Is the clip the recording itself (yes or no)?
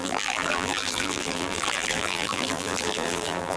no